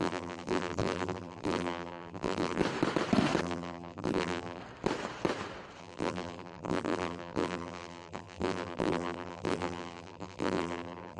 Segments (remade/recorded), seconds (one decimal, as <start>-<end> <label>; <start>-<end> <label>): 0.0-2.6 remade; 2.6-3.4 recorded; 3.4-4.6 remade; 4.6-5.8 recorded; 5.8-11.2 remade